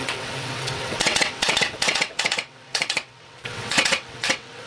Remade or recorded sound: remade